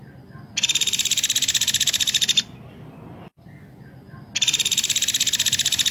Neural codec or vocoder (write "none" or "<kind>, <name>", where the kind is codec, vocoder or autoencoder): none